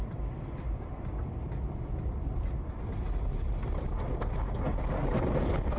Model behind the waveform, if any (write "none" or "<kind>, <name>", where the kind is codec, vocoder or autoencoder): vocoder, BigVGAN v2